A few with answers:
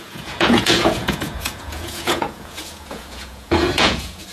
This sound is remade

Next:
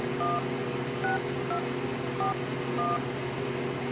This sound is recorded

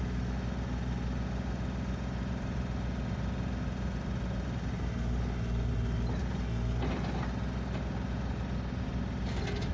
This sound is recorded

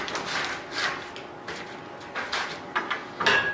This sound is recorded